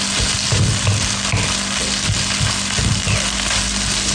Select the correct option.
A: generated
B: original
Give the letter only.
B